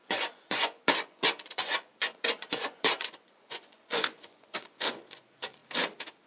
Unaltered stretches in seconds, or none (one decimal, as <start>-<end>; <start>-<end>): 5.6-6.3